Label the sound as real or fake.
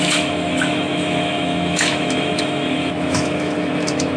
fake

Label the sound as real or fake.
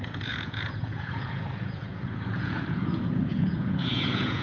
fake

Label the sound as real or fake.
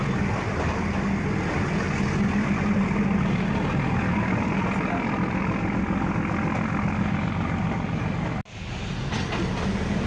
real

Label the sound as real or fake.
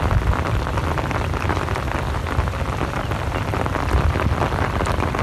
real